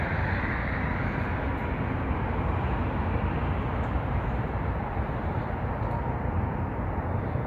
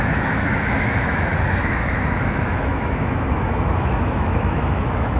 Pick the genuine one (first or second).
first